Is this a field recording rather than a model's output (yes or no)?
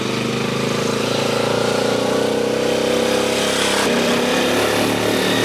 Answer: yes